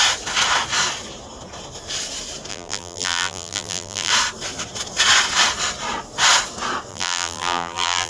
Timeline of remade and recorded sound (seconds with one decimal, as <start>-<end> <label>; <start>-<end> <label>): 0.0-2.5 recorded; 2.5-4.1 remade; 4.1-6.9 recorded; 6.9-8.1 remade